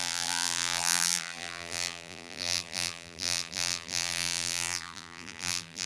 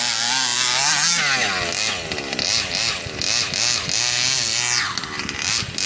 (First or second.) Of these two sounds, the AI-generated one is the first